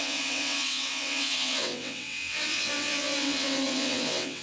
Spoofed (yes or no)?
yes